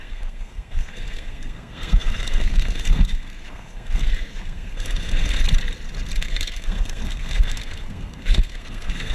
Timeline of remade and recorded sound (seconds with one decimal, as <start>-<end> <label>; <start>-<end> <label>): 0.0-5.4 remade; 5.4-6.2 recorded; 6.2-9.1 remade